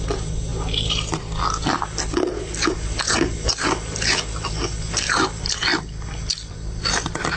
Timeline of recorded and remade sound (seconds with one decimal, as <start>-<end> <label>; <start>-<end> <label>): 0.0-7.4 recorded